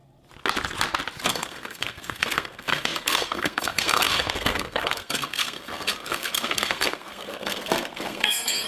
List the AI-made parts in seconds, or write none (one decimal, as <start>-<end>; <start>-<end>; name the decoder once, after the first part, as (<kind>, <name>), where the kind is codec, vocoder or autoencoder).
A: 1.3-8.7 (codec, SNAC)